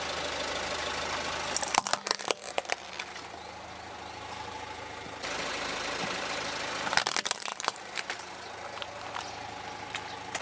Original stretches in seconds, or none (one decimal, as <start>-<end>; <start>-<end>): 0.0-7.5; 8.2-10.4